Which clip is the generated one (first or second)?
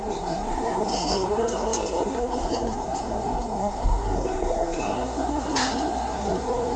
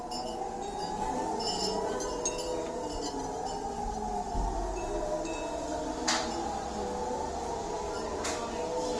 first